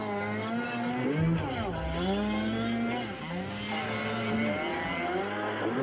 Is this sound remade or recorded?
recorded